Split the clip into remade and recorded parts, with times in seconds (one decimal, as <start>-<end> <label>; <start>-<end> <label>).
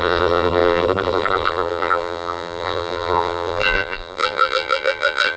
0.0-5.4 remade